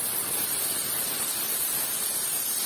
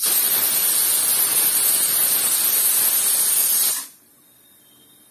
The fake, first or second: first